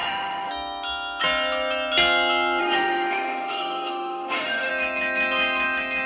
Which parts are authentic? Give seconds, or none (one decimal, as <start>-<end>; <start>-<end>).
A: 0.5-2.6; 4.7-6.1